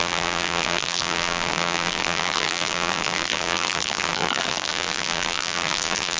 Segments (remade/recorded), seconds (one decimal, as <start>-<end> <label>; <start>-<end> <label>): 0.0-6.2 remade